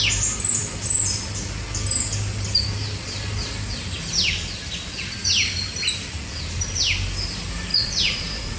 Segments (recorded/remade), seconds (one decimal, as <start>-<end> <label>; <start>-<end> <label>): 0.0-7.7 recorded; 7.7-8.6 remade